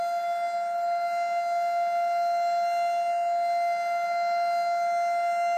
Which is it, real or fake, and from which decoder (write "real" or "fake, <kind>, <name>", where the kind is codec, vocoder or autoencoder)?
real